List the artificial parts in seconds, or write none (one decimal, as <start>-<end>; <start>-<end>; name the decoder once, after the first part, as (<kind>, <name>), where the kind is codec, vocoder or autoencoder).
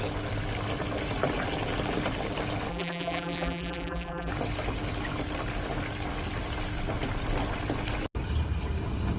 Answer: 2.7-4.3 (vocoder, BigVGAN v2)